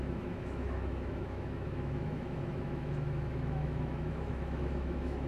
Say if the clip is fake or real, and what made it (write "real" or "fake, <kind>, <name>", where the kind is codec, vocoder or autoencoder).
fake, autoencoder, DAC-VAE